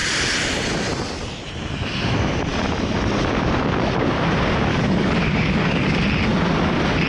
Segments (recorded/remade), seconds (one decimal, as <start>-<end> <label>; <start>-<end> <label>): 0.0-4.7 recorded; 4.7-6.0 remade; 6.0-7.1 recorded